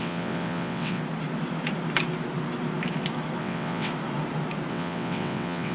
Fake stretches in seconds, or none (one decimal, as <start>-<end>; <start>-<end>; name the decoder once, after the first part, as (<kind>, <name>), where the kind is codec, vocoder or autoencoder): 0.0-1.0 (vocoder, WaveNeXt); 3.4-3.9; 4.7-5.7